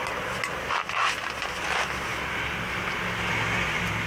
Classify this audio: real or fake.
real